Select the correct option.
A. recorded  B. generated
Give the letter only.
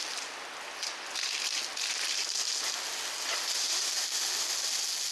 A